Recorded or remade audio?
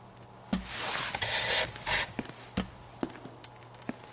recorded